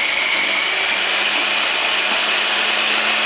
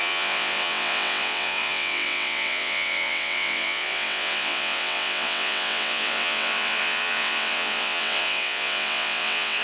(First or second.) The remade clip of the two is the second